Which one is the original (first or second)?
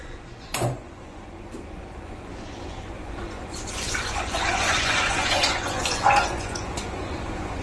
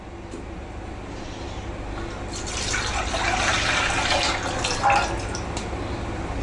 second